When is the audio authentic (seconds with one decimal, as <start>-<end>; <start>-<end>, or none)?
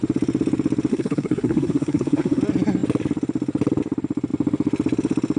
0.0-0.9; 2.4-5.4